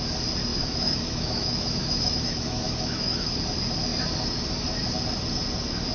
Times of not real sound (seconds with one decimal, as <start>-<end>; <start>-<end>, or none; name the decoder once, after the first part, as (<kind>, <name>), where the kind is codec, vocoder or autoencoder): 0.5-3.4 (autoencoder, DAC-VAE)